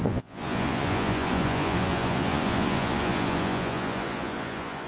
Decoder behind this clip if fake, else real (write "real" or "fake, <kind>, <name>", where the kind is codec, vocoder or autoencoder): fake, vocoder, Vocos